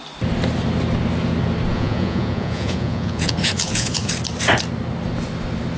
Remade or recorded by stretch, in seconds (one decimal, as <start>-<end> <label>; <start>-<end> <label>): 0.0-1.7 recorded; 1.7-4.1 remade; 4.1-5.8 recorded